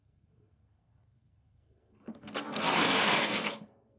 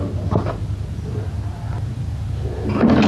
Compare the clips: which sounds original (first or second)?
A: second